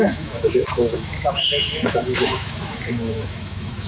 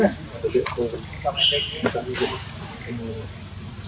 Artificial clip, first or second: first